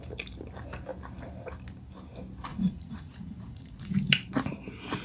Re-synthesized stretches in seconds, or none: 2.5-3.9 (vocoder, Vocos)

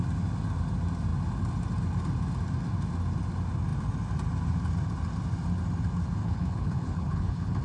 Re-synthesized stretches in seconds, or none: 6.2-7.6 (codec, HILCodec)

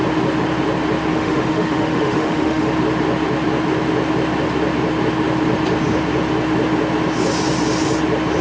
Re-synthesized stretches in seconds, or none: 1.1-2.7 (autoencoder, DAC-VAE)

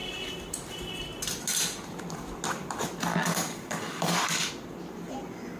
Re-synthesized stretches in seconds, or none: 3.1-4.5 (codec, DAC)

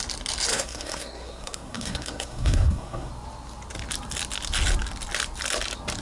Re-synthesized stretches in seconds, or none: 0.5-3.1 (codec, SNAC)